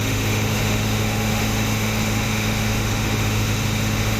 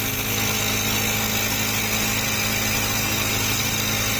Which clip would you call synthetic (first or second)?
first